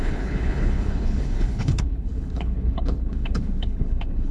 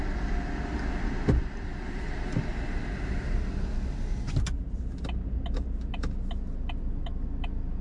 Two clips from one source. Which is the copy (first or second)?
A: first